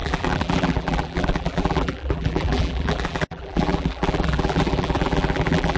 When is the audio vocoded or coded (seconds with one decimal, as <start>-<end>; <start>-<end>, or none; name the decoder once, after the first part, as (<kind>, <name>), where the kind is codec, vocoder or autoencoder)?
0.0-5.8 (vocoder, BigVGAN v2)